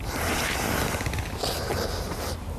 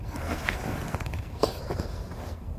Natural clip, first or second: first